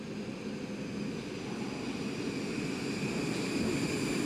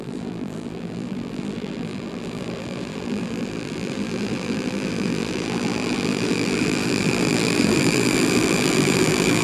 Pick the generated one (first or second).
second